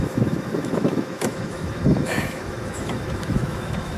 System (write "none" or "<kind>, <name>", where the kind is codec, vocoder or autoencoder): autoencoder, DAC-VAE